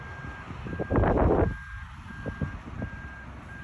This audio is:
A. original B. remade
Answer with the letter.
A